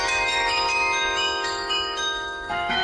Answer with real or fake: fake